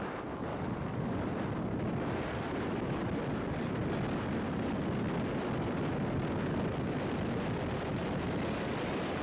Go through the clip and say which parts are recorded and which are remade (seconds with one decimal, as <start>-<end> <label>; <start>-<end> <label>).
0.0-0.5 recorded; 0.5-1.3 remade; 1.3-9.2 recorded